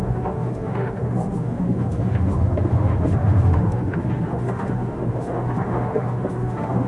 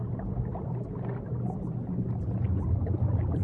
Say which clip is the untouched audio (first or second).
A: second